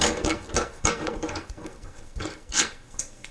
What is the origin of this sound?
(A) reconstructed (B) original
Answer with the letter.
A